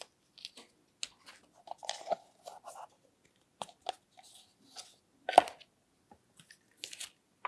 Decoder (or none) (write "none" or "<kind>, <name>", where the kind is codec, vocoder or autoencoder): none